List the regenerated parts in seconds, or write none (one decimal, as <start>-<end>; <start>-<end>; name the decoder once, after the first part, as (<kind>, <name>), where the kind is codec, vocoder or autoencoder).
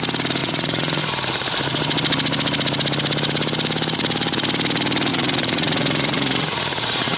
0.4-1.0 (vocoder, Vocos); 5.1-7.2